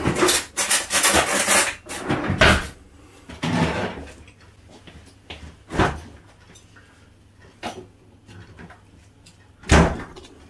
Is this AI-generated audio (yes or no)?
no